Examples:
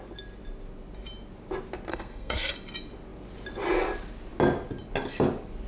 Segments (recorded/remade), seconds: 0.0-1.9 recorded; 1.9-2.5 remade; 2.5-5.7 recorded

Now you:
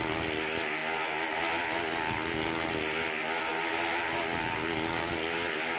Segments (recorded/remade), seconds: 0.0-5.8 recorded

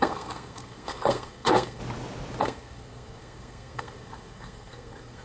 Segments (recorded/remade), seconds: 0.0-1.8 remade; 1.8-2.4 recorded; 2.4-5.2 remade

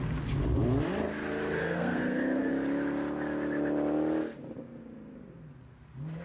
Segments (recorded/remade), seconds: 0.0-1.6 recorded; 1.6-2.5 remade; 2.5-6.2 recorded

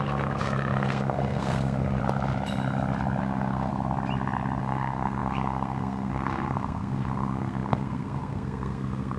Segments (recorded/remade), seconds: 0.0-2.0 remade; 2.0-3.2 recorded; 3.2-3.7 remade; 3.7-4.6 recorded; 4.6-9.2 remade

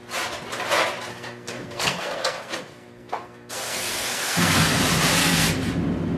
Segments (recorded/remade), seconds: 0.0-1.1 recorded; 1.1-4.8 remade; 4.8-5.2 recorded; 5.2-5.7 remade; 5.7-6.2 recorded

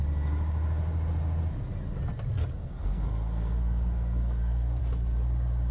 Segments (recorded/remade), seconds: 0.0-2.6 recorded; 2.6-4.8 remade; 4.8-5.7 recorded

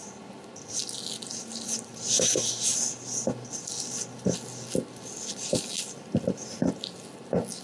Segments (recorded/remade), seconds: 0.0-7.6 recorded